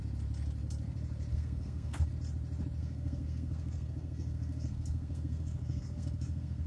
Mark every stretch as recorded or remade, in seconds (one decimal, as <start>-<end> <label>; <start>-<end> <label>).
0.0-1.3 recorded; 1.3-2.1 remade; 2.1-2.8 recorded; 2.8-6.7 remade